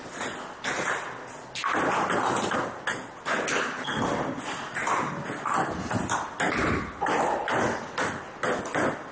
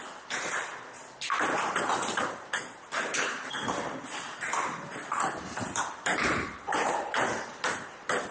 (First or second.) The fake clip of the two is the second